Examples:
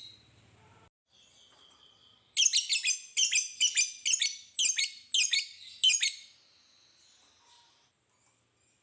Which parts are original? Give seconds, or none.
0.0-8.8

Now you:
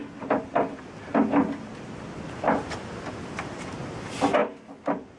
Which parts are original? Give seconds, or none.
0.0-5.2

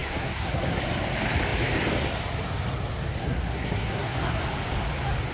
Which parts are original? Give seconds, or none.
0.8-3.2; 4.4-5.3

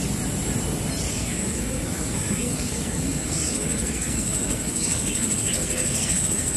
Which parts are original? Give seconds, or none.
0.0-1.1

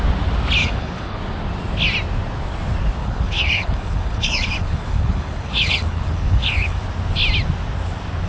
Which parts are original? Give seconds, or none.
0.0-0.6; 1.2-3.0; 6.8-8.3

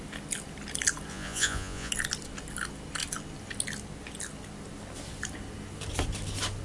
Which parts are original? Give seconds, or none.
0.0-1.1; 1.9-6.6